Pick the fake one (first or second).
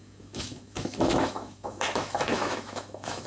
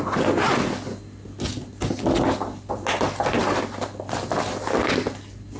first